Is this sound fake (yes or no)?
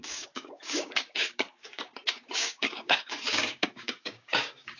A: yes